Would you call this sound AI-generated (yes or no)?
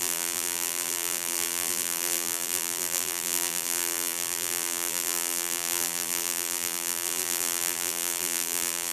yes